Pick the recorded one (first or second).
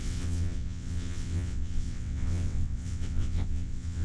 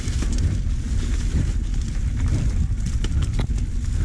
second